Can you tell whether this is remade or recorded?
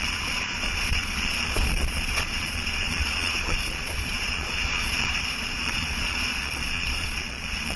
remade